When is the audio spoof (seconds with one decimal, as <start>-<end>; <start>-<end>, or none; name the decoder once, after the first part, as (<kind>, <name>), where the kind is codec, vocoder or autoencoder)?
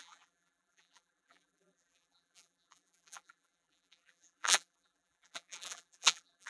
0.0-6.5 (vocoder, BigVGAN v2)